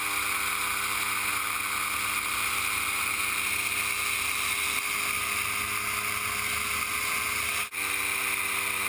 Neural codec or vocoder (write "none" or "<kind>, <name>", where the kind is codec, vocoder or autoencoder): none